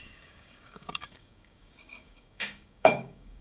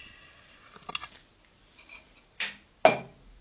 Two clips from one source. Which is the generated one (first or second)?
first